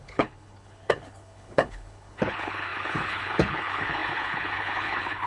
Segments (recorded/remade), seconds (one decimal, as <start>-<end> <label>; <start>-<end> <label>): 0.0-5.3 remade